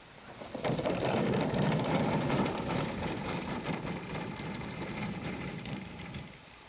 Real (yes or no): no